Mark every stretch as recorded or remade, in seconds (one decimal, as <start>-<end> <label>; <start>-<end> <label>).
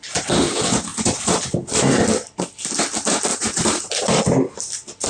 0.0-3.3 recorded; 3.3-4.2 remade; 4.2-5.1 recorded